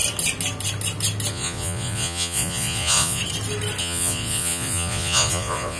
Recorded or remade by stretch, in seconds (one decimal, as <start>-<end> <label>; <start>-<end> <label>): 0.0-1.3 recorded; 1.3-3.2 remade; 3.2-3.8 recorded; 3.8-5.8 remade